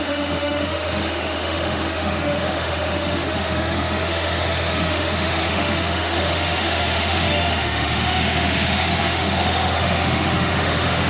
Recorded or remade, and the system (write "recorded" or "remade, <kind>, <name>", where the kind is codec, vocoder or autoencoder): remade, autoencoder, DAC-VAE